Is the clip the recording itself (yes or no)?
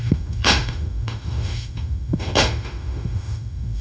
no